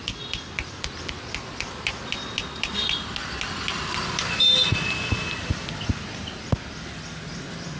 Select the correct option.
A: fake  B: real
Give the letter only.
B